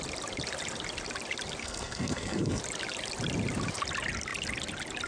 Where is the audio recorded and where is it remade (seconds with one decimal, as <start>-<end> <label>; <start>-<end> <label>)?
0.0-1.6 recorded; 1.6-2.6 remade; 2.6-5.1 recorded